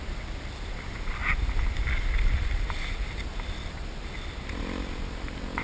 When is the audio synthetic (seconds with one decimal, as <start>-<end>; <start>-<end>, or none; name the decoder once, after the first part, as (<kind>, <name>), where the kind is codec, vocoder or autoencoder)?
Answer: none